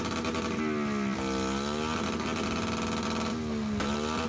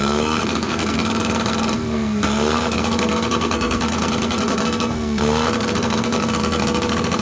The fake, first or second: second